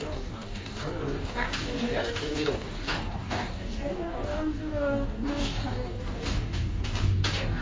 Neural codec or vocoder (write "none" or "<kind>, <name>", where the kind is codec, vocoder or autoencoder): codec, DAC